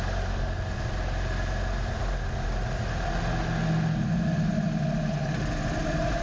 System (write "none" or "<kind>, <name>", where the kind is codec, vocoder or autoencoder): none